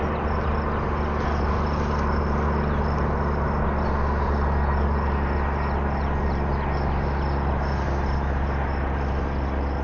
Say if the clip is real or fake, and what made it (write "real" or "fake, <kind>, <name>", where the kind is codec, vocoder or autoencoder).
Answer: real